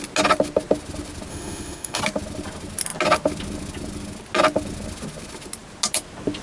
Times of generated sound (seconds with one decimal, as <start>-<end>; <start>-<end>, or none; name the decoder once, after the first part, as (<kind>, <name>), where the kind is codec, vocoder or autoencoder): 1.3-2.0 (autoencoder, DAC-VAE)